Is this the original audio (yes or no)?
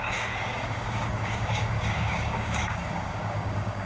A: no